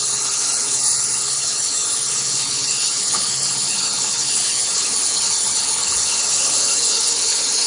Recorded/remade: remade